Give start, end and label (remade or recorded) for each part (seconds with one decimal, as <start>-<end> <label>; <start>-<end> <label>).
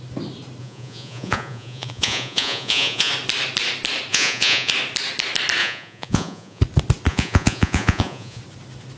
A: 0.0-0.6 recorded; 0.6-3.1 remade; 3.1-4.1 recorded; 4.1-4.7 remade; 4.7-5.6 recorded; 5.6-6.6 remade; 6.6-7.1 recorded; 7.1-8.4 remade; 8.4-9.0 recorded